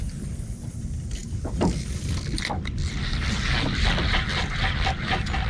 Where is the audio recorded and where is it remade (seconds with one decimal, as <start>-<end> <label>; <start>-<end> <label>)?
0.0-5.5 recorded